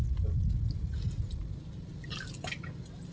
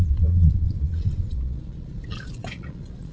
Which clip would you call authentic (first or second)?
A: first